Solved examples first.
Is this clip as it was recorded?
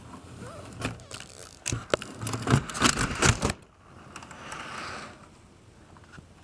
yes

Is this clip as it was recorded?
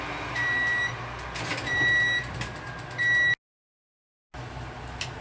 yes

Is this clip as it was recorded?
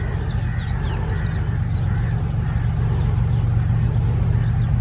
yes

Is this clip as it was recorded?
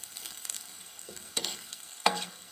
no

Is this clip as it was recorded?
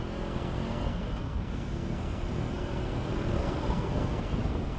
no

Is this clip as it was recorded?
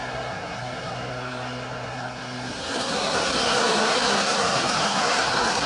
no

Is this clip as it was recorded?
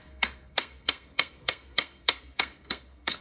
no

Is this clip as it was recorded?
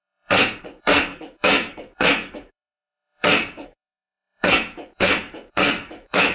no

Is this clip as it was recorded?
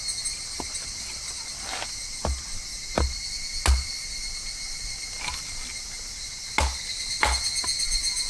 yes